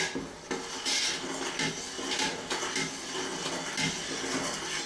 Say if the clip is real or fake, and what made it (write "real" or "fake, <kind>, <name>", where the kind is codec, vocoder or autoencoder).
real